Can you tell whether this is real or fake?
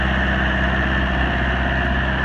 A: real